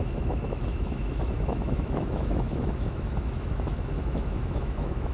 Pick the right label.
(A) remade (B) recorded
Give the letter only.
A